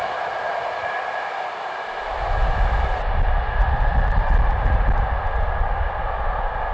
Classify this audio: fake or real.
real